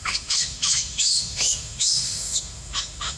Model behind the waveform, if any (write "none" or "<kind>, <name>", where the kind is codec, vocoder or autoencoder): autoencoder, DAC-VAE